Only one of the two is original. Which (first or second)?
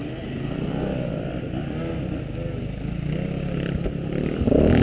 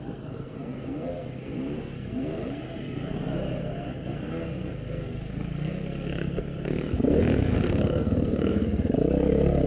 first